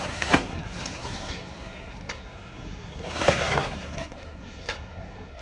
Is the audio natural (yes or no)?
no